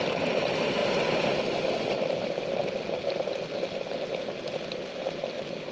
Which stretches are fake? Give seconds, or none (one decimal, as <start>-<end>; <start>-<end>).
0.0-0.8; 1.4-2.6; 5.1-5.7